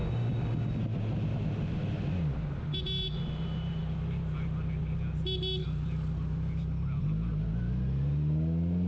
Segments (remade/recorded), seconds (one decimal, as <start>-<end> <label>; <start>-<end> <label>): 0.0-0.8 remade; 0.8-8.9 recorded